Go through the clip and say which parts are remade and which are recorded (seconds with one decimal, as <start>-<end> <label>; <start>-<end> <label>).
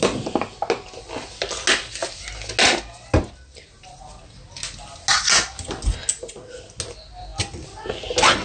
0.0-8.4 recorded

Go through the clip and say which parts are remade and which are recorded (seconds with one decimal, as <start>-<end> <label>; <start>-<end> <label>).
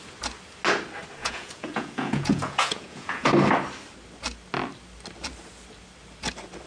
0.0-1.2 recorded; 1.2-3.3 remade; 3.3-6.7 recorded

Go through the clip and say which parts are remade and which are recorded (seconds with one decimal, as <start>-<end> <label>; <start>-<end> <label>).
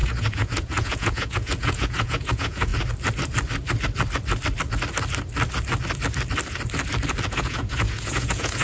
0.0-2.7 remade; 2.7-7.3 recorded; 7.3-8.6 remade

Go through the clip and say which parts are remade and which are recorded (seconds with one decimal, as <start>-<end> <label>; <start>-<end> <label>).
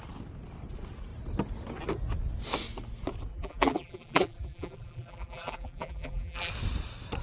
0.0-3.3 recorded; 3.3-6.5 remade; 6.5-7.2 recorded